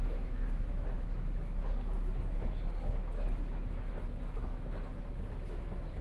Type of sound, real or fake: fake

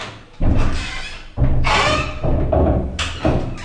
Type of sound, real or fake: real